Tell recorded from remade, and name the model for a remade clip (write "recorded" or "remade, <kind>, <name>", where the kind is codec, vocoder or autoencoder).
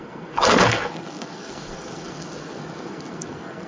remade, codec, SNAC